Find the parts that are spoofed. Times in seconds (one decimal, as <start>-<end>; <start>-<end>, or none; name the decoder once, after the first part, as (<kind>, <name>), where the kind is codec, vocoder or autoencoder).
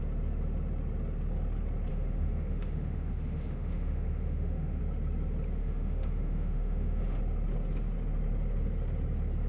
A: 1.9-4.8 (autoencoder, DAC-VAE); 5.6-7.2